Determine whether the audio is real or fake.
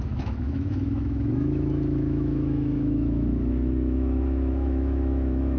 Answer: fake